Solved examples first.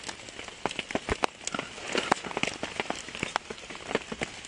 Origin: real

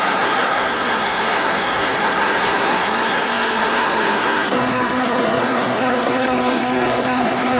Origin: fake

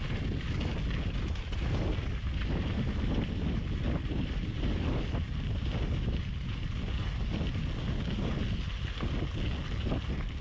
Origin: real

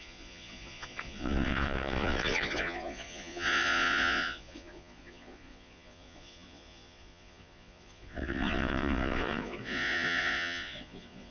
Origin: fake